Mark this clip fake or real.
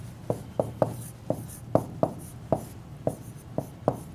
real